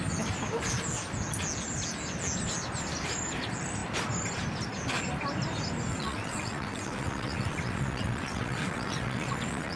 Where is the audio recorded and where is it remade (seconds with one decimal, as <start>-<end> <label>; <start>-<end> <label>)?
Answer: 0.0-5.9 recorded; 5.9-9.8 remade